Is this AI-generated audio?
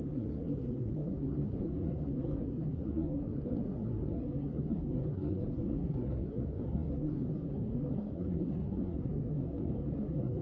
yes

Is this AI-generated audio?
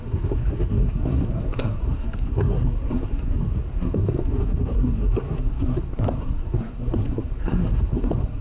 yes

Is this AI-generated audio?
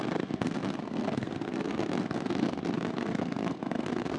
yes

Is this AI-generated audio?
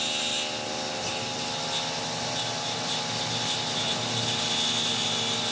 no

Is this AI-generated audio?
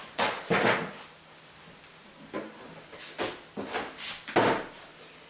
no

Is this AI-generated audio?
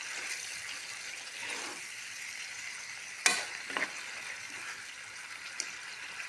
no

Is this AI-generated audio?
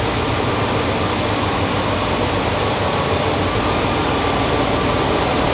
no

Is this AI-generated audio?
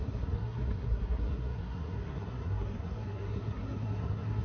yes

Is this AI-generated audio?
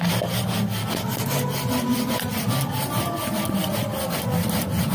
no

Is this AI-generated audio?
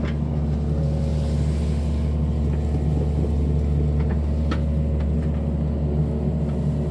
no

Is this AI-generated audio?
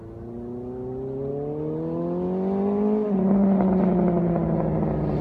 no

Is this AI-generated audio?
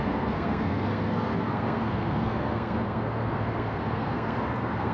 yes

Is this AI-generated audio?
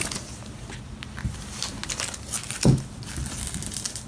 no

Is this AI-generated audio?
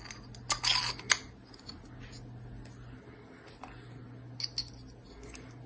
no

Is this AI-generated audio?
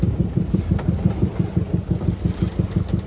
no